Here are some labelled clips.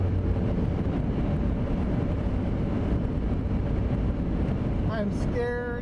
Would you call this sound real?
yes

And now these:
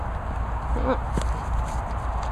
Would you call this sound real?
yes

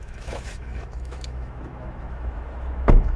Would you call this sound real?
no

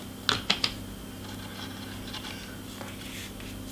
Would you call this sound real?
yes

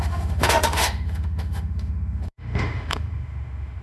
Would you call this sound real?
no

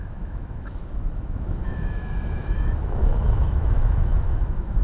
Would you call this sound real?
no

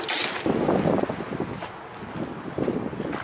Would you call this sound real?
yes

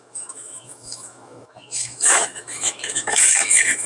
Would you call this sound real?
no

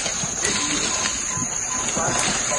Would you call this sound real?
yes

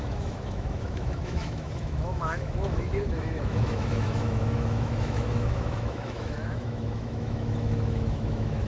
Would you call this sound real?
no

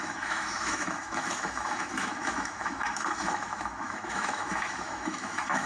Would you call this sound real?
no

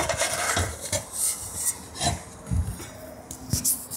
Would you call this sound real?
yes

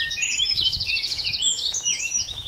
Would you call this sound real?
no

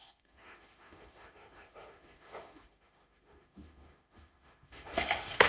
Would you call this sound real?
no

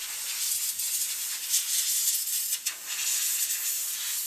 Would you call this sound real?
yes